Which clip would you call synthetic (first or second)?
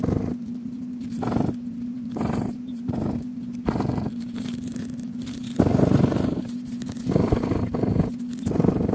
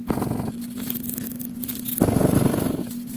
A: first